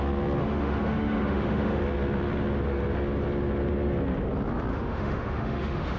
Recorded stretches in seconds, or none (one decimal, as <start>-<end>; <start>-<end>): 0.0-0.4; 1.8-4.7